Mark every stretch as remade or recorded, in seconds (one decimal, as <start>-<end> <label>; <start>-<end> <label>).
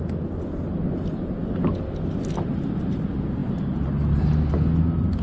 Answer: 0.0-5.2 recorded